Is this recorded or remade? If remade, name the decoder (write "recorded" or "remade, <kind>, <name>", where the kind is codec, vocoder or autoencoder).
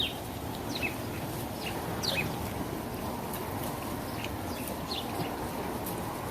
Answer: recorded